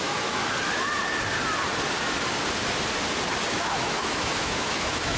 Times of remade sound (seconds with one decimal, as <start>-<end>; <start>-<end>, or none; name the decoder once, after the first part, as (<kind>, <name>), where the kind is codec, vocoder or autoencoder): 0.0-0.4 (autoencoder, DAC-VAE); 3.5-5.2